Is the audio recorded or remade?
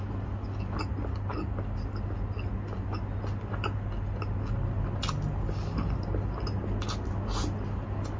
recorded